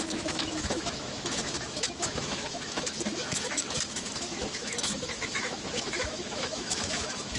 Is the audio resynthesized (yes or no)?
yes